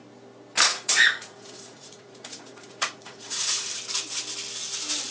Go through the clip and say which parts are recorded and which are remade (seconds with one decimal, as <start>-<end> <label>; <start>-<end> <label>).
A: 0.0-0.7 recorded; 0.7-3.8 remade; 3.8-5.1 recorded